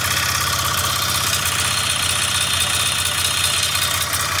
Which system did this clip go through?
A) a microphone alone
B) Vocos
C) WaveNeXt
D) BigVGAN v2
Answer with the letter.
A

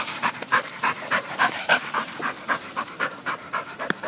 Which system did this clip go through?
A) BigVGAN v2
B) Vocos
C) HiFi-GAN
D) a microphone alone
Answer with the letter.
A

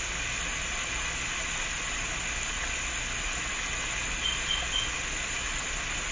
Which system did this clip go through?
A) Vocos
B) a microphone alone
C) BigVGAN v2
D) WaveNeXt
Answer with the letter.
B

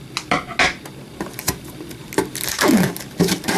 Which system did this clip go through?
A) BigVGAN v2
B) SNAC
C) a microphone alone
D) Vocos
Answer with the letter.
C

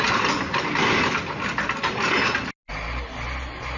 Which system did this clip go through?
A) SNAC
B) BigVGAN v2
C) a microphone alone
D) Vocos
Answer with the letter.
C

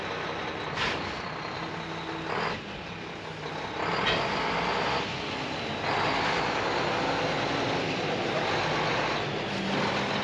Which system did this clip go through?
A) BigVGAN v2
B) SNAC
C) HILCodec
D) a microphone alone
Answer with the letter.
D